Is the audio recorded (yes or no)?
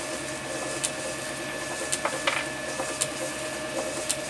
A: yes